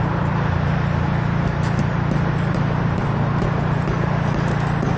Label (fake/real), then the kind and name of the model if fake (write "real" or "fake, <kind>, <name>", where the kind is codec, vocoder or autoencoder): real